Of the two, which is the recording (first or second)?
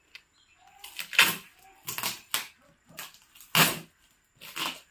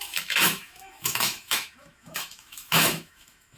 first